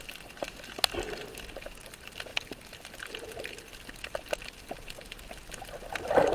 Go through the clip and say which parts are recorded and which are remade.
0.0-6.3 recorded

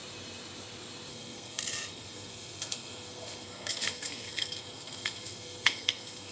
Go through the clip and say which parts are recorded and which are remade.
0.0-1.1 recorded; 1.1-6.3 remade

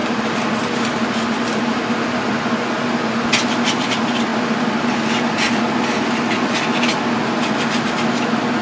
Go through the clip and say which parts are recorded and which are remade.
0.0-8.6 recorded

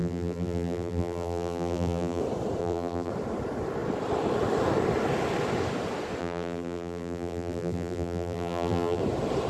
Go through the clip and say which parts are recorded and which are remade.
0.0-2.2 remade; 2.2-2.6 recorded; 2.6-3.1 remade; 3.1-6.2 recorded; 6.2-9.0 remade; 9.0-9.5 recorded

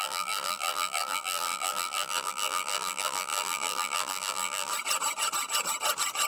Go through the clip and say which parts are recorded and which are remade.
0.0-4.7 remade; 4.7-6.3 recorded

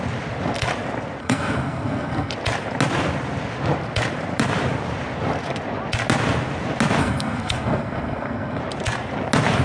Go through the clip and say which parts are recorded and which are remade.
0.0-1.2 recorded; 1.2-2.3 remade; 2.3-7.0 recorded; 7.0-8.6 remade; 8.6-9.6 recorded

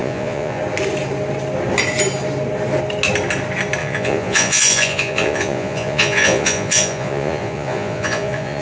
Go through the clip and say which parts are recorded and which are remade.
0.0-0.6 remade; 0.6-3.8 recorded; 3.8-8.6 remade